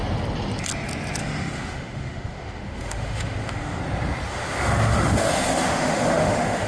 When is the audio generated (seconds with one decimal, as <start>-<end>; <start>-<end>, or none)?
1.2-3.8; 4.3-6.7